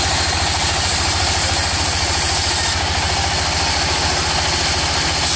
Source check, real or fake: real